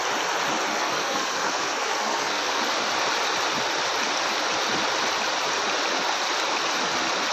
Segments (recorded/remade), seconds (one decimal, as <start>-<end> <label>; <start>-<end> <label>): 0.0-0.7 recorded; 0.7-2.6 remade; 2.6-7.3 recorded